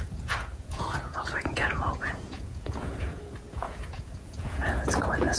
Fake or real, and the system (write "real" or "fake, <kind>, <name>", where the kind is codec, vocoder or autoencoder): fake, vocoder, Vocos